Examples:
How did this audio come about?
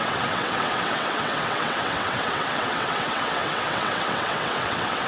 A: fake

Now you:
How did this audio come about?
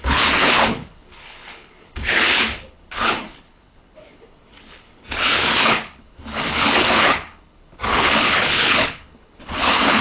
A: fake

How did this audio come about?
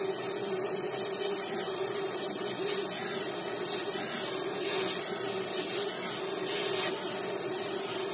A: real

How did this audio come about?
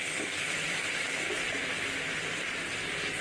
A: fake